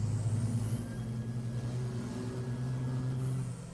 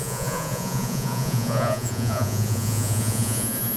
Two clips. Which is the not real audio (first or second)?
second